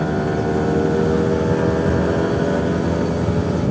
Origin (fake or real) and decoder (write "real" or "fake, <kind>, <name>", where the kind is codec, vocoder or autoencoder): real